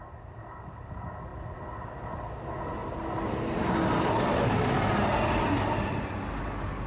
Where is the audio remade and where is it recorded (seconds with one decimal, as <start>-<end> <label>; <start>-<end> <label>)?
0.0-6.9 recorded